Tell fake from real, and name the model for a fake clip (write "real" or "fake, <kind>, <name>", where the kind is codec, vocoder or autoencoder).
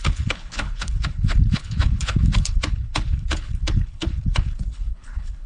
fake, codec, HILCodec